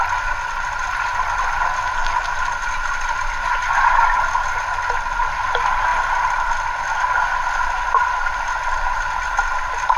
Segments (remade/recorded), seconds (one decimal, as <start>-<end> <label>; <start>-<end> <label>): 0.0-10.0 recorded